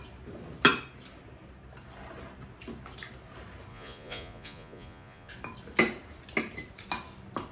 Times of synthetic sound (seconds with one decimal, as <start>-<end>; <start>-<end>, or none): 3.7-5.3